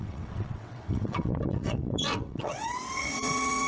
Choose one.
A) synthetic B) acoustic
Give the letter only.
A